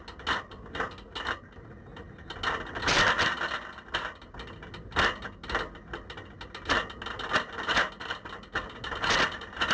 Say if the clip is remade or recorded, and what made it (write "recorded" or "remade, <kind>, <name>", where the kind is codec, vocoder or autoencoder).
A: recorded